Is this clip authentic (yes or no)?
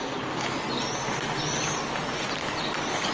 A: yes